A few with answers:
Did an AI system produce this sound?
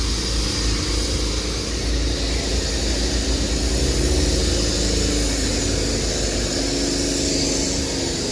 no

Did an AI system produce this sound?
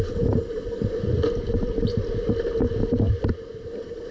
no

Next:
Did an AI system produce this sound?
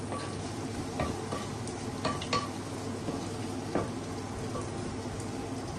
no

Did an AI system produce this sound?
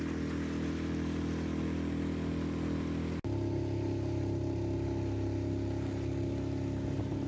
no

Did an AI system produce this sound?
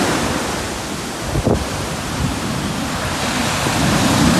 no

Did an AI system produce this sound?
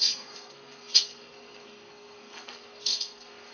yes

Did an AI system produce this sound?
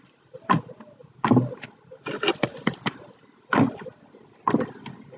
no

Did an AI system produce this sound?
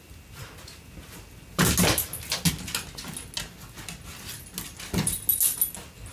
no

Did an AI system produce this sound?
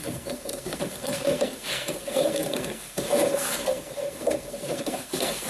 yes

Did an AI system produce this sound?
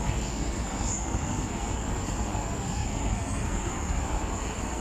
yes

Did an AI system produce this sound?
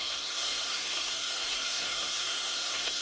yes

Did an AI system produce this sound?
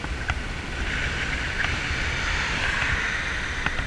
no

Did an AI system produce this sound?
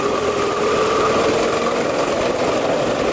no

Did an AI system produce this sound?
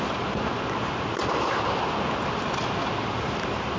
no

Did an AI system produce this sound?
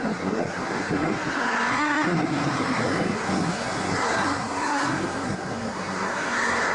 yes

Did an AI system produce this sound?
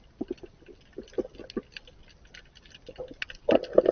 no